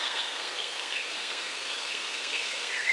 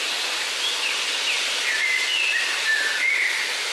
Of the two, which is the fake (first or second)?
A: first